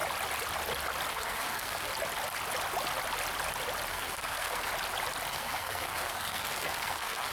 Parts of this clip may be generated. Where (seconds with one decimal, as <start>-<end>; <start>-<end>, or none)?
1.1-1.9; 3.9-4.7; 5.3-7.3

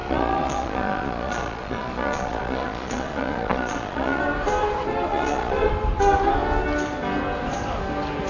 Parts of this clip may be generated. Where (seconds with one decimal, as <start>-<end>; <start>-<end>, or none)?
0.0-4.2; 5.1-5.7